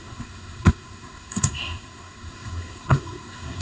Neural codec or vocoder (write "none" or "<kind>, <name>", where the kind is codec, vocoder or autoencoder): codec, SNAC